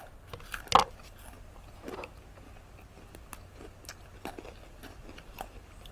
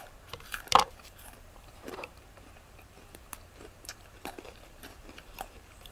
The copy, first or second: second